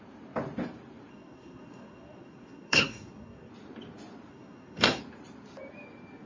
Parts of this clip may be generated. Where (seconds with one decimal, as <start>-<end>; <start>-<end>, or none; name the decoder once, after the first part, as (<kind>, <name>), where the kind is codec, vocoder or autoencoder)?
1.1-3.5 (codec, SNAC); 4.3-5.0